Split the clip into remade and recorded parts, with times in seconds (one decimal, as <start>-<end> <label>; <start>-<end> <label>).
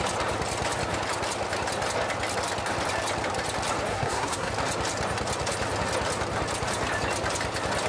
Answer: 0.0-3.9 recorded; 3.9-4.5 remade; 4.5-7.9 recorded